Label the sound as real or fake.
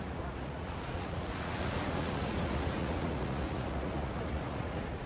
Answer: fake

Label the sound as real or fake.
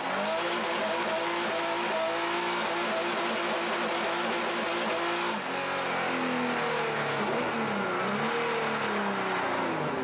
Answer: real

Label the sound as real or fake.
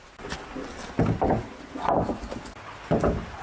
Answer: real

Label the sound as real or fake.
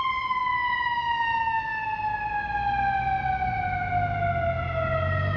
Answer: real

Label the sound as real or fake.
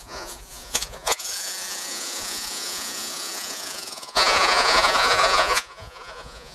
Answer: fake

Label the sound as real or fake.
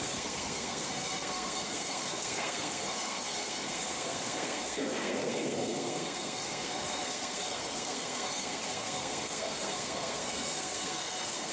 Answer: fake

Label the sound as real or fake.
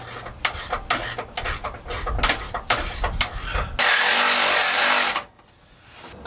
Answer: real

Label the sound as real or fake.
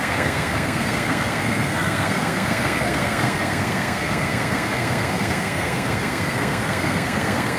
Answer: fake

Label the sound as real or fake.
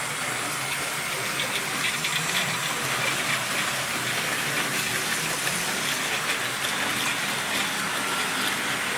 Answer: real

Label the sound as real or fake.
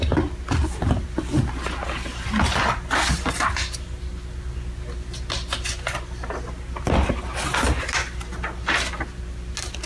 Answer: real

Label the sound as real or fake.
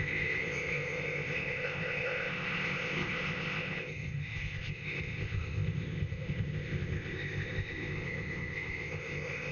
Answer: fake